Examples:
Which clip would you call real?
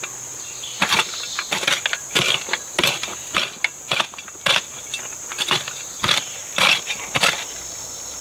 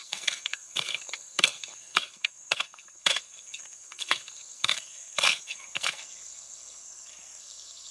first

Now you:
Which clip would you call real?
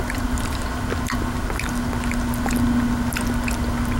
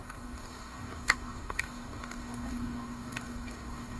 first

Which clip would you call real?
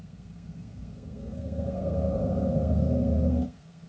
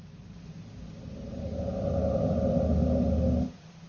second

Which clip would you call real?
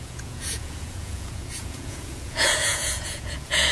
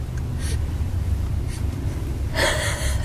second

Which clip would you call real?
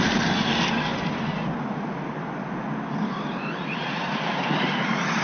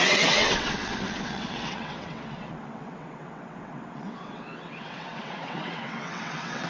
first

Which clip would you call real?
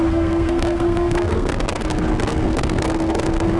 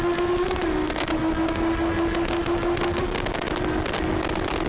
second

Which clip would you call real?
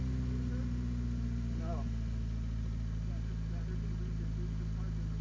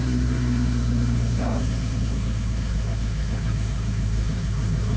first